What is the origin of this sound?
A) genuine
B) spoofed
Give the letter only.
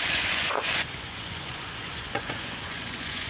B